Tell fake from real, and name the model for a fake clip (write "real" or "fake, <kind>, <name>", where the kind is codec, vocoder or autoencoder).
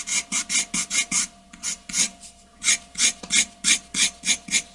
real